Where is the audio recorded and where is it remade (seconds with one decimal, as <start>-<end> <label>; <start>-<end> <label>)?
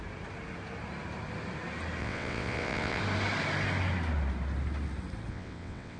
0.0-2.0 recorded; 2.0-3.0 remade; 3.0-5.3 recorded; 5.3-6.0 remade